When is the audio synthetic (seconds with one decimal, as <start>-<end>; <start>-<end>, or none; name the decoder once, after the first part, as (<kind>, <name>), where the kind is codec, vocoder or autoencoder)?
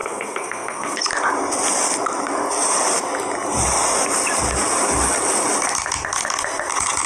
0.0-1.0 (codec, SNAC)